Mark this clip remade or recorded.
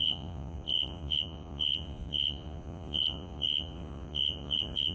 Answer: remade